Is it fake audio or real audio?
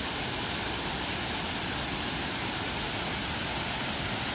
real